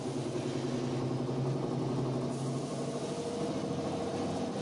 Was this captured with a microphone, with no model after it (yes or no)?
yes